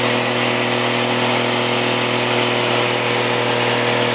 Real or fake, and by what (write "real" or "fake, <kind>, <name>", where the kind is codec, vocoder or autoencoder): real